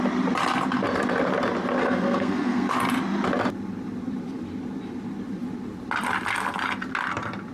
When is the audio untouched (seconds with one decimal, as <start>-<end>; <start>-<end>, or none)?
0.0-1.8; 2.7-7.5